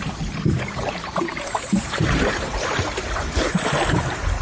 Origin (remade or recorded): remade